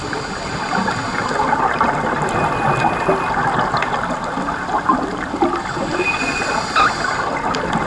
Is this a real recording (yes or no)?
yes